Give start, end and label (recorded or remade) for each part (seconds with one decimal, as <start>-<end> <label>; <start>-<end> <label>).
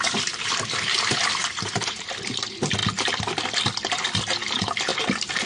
0.0-1.4 recorded; 1.4-2.1 remade; 2.1-4.9 recorded; 4.9-5.5 remade